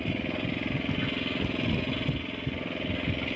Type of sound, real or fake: real